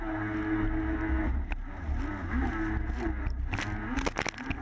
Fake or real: real